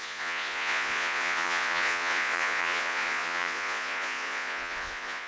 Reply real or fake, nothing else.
fake